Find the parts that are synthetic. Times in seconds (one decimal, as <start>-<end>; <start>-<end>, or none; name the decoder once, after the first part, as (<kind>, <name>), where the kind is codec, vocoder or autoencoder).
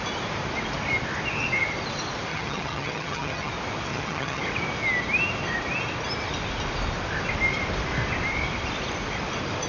2.3-3.5 (vocoder, HiFi-GAN); 3.9-4.4